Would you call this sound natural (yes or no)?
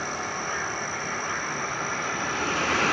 yes